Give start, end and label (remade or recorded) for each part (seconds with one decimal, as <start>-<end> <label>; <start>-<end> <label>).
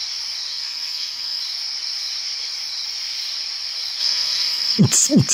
0.0-0.5 recorded; 0.5-1.4 remade; 1.4-4.0 recorded; 4.0-4.8 remade; 4.8-5.3 recorded